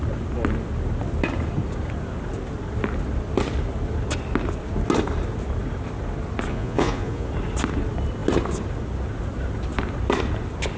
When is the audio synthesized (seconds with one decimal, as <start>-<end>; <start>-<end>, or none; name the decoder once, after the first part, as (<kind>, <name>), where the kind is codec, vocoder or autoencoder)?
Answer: 6.5-7.3 (vocoder, Vocos)